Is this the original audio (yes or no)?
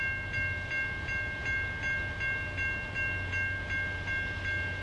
yes